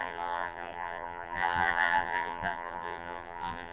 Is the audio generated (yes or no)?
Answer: yes